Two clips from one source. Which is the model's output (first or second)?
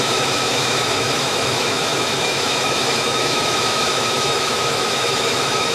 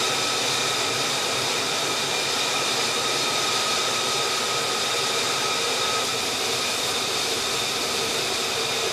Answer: first